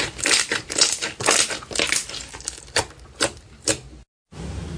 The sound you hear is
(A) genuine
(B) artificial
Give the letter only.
A